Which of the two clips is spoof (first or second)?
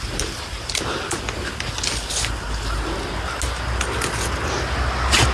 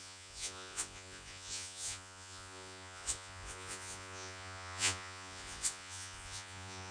second